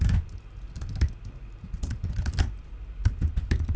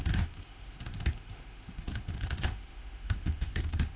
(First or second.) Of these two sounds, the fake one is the second